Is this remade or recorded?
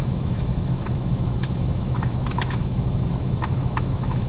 remade